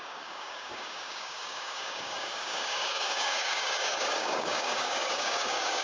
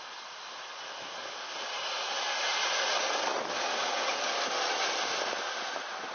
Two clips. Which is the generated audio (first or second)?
first